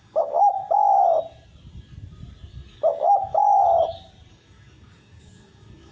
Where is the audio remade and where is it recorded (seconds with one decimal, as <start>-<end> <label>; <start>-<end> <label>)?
0.0-0.6 remade; 0.6-2.7 recorded; 2.7-3.6 remade; 3.6-4.3 recorded; 4.3-5.9 remade